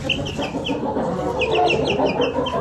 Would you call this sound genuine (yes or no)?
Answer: yes